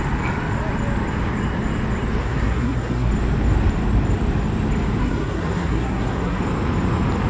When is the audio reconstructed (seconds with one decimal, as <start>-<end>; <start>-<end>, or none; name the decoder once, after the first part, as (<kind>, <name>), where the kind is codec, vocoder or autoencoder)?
2.2-3.1 (codec, SNAC); 5.0-6.4